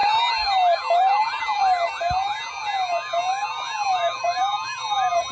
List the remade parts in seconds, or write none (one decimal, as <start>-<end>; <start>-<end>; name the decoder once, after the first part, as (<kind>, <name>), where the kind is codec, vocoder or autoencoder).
1.0-1.6 (vocoder, BigVGAN v2); 3.9-5.3